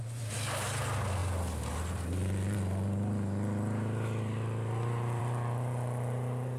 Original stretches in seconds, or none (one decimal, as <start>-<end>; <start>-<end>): 0.0-6.6